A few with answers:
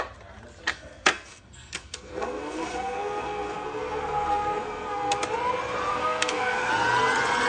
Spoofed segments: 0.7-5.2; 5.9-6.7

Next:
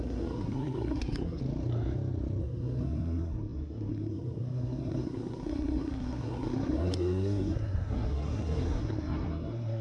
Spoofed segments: 0.0-1.4; 2.4-9.8